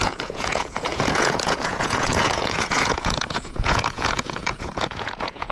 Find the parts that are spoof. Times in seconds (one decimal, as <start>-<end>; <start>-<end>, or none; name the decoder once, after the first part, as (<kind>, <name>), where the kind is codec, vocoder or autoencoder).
0.0-5.5 (vocoder, Vocos)